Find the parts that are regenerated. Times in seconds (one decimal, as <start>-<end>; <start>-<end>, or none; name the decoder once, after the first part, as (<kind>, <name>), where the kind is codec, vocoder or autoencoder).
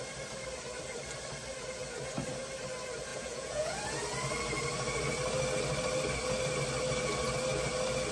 3.1-3.7 (vocoder, Vocos)